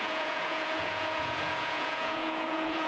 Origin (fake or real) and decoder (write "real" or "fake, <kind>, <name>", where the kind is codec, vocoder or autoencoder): fake, vocoder, Vocos